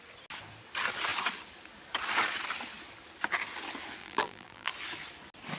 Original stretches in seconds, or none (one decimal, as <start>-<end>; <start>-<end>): 0.0-4.0; 4.7-5.6